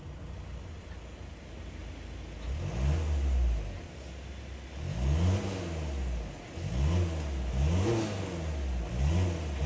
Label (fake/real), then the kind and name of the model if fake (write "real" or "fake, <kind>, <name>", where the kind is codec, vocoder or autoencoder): real